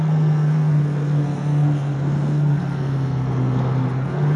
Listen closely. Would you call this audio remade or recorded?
remade